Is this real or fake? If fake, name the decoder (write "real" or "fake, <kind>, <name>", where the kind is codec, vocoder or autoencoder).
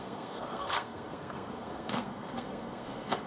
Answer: fake, codec, SNAC